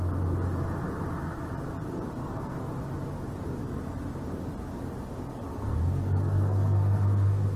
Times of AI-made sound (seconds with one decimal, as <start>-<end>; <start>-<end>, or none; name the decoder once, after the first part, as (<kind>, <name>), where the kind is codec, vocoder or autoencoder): 2.2-2.7 (codec, SNAC); 5.5-7.6